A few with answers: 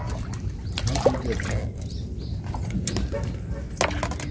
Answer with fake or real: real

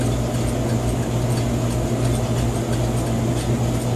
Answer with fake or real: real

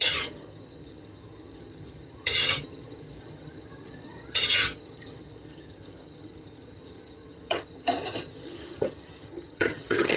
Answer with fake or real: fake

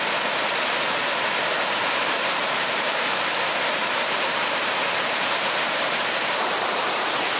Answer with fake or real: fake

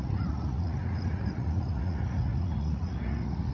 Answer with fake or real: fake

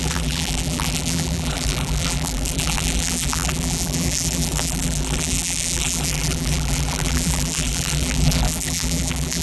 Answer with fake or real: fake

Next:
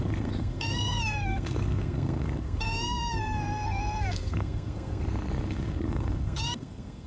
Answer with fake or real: fake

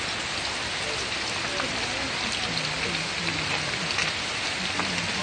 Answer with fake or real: real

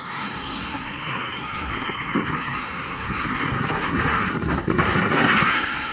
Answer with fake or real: fake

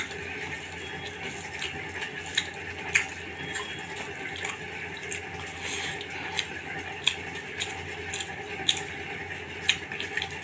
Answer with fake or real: real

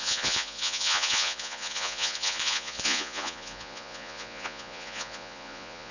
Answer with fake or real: fake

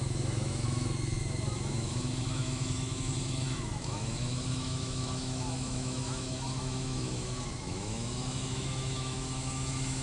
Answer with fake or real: fake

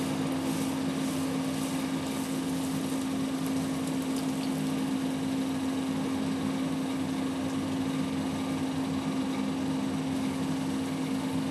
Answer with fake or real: real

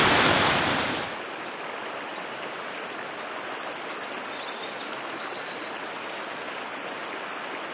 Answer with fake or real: real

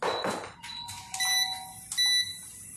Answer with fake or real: real